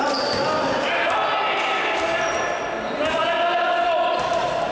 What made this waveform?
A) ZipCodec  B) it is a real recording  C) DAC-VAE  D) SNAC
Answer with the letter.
B